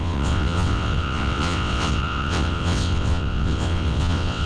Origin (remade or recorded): remade